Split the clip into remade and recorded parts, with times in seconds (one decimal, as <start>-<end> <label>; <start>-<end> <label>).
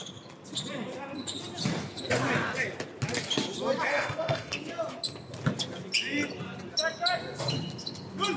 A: 0.0-3.9 recorded; 3.9-4.6 remade; 4.6-8.4 recorded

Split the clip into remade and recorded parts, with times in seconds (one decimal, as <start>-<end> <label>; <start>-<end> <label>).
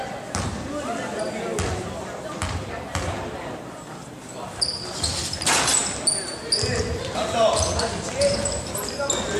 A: 0.0-9.4 recorded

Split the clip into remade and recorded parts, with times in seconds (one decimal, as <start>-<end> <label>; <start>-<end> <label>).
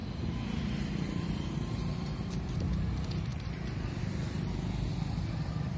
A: 0.0-3.3 recorded; 3.3-4.0 remade; 4.0-5.8 recorded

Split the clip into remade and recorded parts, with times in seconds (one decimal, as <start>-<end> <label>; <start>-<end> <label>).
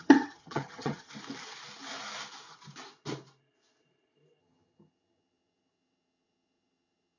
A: 0.0-1.1 remade; 1.1-4.4 recorded; 4.4-7.2 remade